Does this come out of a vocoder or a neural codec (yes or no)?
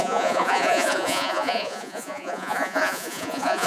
yes